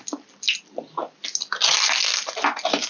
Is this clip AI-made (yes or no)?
no